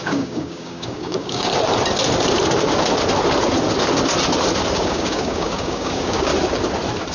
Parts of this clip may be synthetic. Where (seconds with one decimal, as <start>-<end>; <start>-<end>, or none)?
0.0-1.5; 4.7-6.3

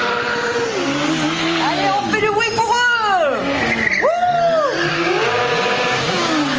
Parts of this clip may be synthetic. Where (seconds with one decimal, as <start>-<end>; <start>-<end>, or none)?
4.9-6.6

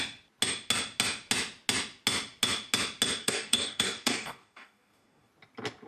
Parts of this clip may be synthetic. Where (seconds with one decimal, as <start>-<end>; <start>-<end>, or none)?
3.2-5.3

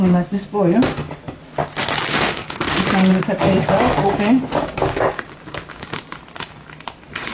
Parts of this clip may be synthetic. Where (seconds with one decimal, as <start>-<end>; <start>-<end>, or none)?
1.6-2.8; 3.2-6.1

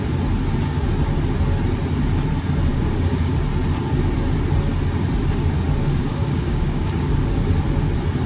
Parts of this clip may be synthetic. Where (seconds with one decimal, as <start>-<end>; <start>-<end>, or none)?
2.7-3.3; 6.0-7.5

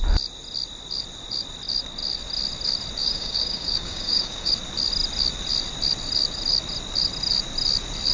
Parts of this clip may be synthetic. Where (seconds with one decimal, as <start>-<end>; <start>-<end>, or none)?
3.0-4.5

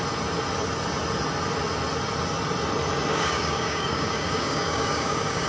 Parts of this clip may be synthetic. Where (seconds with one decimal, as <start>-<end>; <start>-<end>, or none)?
3.1-5.5

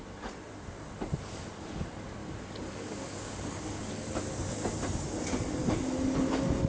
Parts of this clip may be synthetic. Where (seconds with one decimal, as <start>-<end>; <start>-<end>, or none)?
2.2-4.2